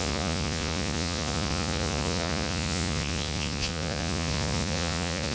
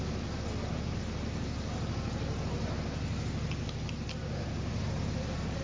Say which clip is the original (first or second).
second